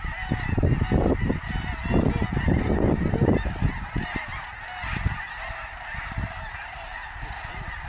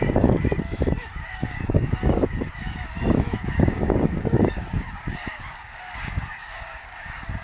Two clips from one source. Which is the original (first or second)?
first